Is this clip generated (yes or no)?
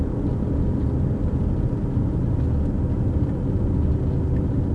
no